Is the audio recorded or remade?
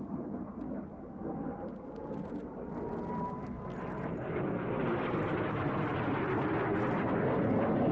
recorded